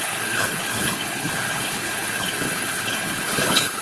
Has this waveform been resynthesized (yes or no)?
yes